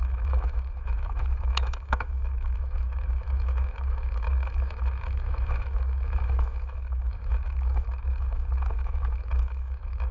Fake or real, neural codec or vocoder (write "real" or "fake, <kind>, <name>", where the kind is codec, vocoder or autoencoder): fake, autoencoder, DAC-VAE